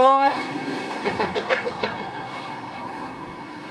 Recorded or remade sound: remade